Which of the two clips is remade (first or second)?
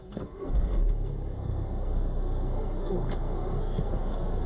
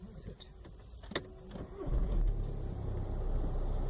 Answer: first